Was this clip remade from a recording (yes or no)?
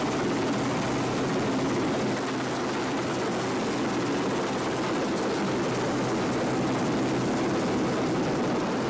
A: no